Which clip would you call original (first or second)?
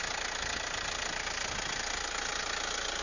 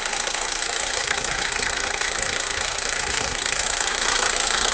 first